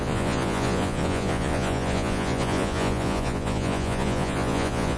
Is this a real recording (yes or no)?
no